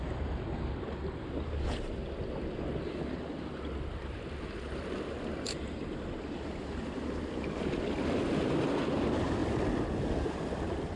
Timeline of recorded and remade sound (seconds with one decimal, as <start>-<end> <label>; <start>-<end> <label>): 0.0-11.0 recorded